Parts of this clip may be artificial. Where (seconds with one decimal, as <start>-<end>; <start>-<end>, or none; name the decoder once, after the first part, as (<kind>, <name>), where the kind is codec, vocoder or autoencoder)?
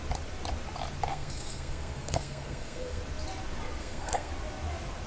1.1-3.0 (codec, SNAC); 3.8-4.3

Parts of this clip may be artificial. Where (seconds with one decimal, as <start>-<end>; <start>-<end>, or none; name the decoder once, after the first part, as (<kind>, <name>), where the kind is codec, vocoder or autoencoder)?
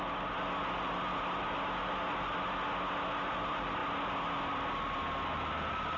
none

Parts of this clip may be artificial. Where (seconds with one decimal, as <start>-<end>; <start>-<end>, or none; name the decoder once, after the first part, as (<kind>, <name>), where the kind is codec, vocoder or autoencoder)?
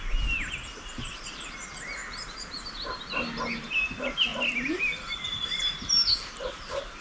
2.0-2.6 (vocoder, BigVGAN v2)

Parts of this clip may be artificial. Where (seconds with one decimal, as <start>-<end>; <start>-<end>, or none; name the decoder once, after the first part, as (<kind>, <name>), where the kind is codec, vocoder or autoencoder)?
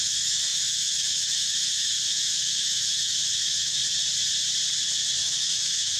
0.0-3.8 (autoencoder, DAC-VAE); 5.2-6.0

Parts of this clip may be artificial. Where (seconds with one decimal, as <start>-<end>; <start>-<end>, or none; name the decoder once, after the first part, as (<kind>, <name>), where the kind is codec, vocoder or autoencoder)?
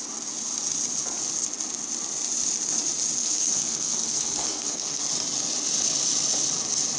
3.2-5.0 (codec, SNAC)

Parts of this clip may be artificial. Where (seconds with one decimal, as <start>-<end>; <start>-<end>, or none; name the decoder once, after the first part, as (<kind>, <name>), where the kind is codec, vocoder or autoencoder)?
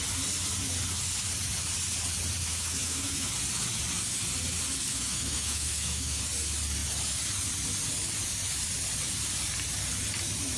2.4-3.3 (autoencoder, DAC-VAE); 4.9-6.2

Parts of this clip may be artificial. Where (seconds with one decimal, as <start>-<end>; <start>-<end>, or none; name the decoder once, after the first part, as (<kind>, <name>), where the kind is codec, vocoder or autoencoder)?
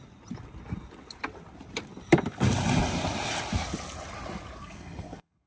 4.6-5.5 (codec, SNAC)